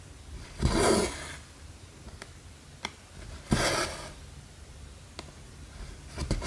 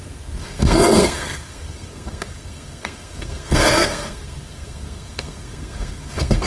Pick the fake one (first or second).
second